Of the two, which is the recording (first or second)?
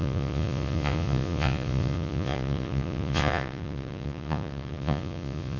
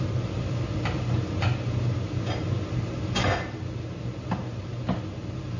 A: second